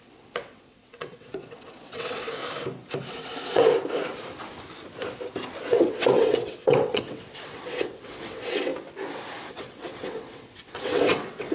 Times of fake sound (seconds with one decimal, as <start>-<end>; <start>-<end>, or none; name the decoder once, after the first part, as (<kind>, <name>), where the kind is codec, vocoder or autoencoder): 0.0-2.4 (vocoder, WaveNeXt); 3.1-3.7; 5.7-8.7; 9.5-11.5